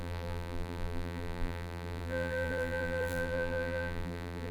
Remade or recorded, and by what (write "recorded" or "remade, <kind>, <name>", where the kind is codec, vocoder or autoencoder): remade, vocoder, BigVGAN v2